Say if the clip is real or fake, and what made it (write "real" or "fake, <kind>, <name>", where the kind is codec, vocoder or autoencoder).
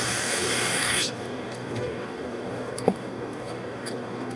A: fake, codec, DAC